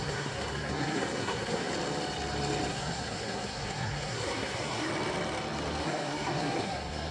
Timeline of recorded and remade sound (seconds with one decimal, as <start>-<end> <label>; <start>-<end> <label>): 0.0-1.7 remade; 1.7-2.7 recorded; 2.7-4.9 remade; 4.9-5.8 recorded; 5.8-7.1 remade